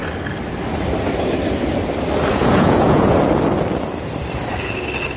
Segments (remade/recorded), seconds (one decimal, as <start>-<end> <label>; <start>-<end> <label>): 0.0-2.3 recorded; 2.3-3.2 remade; 3.2-5.2 recorded